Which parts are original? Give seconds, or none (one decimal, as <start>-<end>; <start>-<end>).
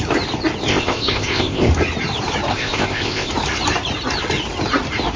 0.0-0.7; 1.7-2.5; 3.3-5.2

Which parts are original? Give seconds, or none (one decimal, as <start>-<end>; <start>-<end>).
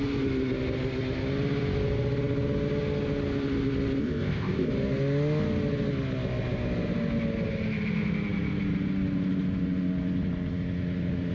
0.0-4.0; 4.7-11.3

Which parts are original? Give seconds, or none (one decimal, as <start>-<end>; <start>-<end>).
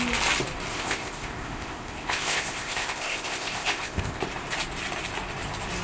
0.0-0.7; 4.2-5.8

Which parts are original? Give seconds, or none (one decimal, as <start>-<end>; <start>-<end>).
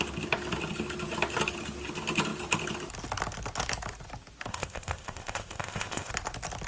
0.0-4.5; 6.1-6.7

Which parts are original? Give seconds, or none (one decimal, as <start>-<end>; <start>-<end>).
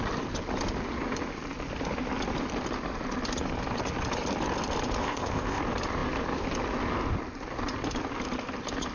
0.0-5.0; 5.6-8.9